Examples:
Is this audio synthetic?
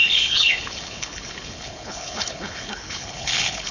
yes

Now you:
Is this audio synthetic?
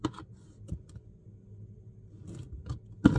no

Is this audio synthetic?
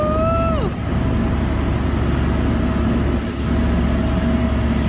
no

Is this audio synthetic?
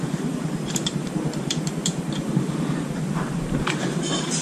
yes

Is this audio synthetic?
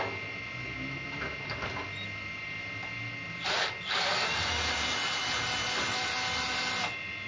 no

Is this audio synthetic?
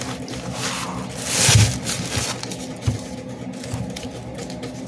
no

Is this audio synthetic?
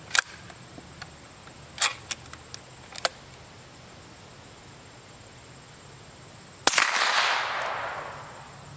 no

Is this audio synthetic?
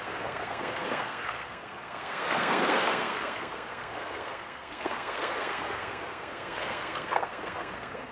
yes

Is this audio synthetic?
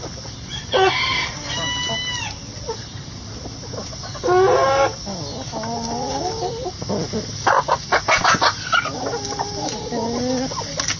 no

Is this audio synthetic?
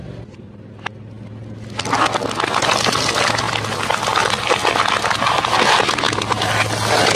no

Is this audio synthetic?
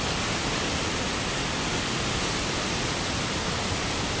no